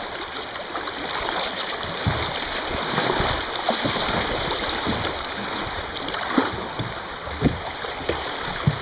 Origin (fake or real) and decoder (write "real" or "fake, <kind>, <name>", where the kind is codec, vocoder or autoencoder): fake, vocoder, BigVGAN v2